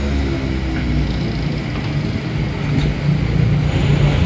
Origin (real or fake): real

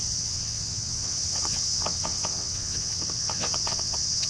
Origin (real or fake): fake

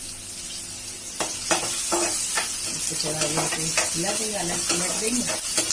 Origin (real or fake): real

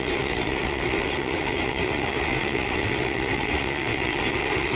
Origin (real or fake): fake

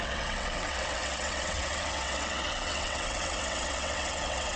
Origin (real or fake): fake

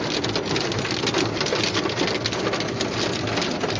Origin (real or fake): real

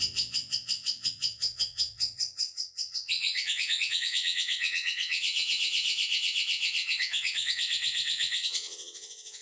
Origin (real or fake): fake